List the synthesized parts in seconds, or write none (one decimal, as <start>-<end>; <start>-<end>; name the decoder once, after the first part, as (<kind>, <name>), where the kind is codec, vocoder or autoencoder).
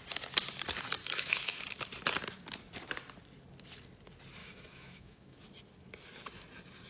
1.0-1.6 (autoencoder, DAC-VAE); 4.4-5.4